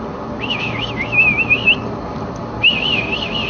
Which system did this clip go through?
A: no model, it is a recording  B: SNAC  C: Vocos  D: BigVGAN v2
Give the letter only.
A